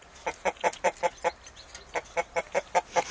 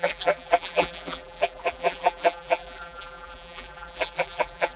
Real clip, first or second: first